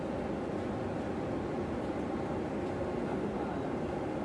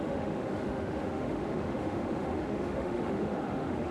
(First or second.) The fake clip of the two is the second